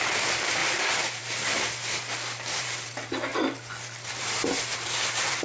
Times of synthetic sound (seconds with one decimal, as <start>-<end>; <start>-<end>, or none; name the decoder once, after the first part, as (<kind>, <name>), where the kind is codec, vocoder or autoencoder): 0.0-0.6 (vocoder, BigVGAN v2); 1.2-5.4